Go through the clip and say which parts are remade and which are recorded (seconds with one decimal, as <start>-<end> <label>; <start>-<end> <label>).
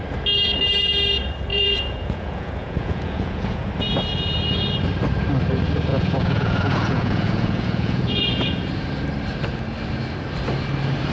0.0-1.5 recorded; 1.5-3.7 remade; 3.7-5.9 recorded; 5.9-8.6 remade; 8.6-11.1 recorded